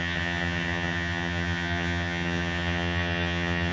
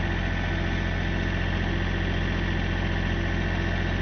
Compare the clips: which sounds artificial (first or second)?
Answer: first